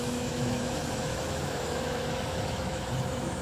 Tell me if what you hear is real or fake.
fake